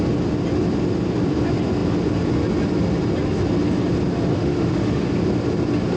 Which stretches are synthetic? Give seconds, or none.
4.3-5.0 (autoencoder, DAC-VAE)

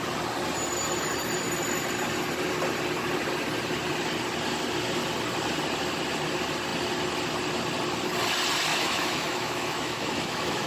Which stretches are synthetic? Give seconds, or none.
8.7-10.7 (autoencoder, DAC-VAE)